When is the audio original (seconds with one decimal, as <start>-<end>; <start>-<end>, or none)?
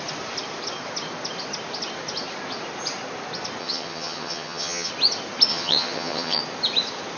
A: 0.0-3.6; 4.9-5.5; 6.4-7.2